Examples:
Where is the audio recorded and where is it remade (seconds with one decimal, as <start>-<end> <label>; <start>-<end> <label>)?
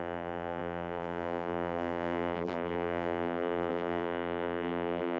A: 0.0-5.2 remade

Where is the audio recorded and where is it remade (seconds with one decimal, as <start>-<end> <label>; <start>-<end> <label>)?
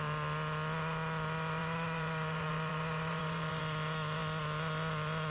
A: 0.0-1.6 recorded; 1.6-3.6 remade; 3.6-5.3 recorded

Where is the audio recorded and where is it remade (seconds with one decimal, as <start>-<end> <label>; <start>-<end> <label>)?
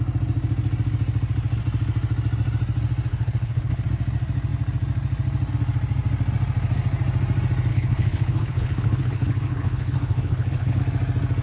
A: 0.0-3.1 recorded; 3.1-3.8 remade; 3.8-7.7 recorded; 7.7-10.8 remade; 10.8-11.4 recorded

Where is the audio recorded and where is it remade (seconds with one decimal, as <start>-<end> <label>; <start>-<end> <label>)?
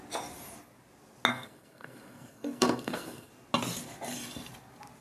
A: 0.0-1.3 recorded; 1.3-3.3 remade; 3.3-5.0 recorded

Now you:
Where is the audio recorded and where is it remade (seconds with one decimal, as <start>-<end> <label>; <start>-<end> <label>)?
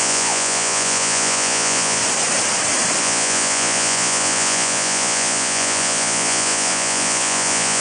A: 0.0-2.0 remade; 2.0-3.0 recorded; 3.0-7.8 remade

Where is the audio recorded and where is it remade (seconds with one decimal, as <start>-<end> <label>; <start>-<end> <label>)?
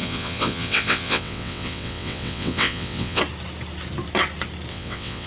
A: 0.0-3.2 remade; 3.2-4.7 recorded; 4.7-5.3 remade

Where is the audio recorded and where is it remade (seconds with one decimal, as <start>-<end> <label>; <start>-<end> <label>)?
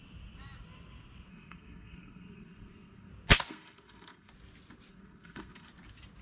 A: 0.0-1.3 recorded; 1.3-3.1 remade; 3.1-3.5 recorded; 3.5-4.3 remade; 4.3-4.9 recorded; 4.9-5.7 remade; 5.7-6.2 recorded